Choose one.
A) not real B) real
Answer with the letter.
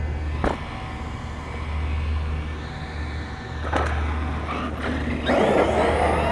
B